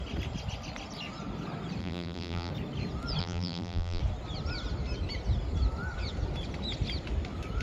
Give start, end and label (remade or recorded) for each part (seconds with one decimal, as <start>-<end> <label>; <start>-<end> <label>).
0.0-1.8 recorded; 1.8-2.5 remade; 2.5-3.2 recorded; 3.2-4.0 remade; 4.0-7.6 recorded